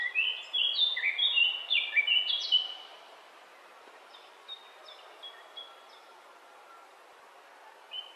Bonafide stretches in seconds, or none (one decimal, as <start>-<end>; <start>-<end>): 0.0-8.2